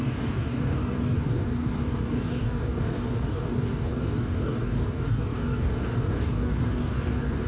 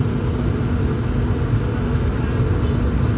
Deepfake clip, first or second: first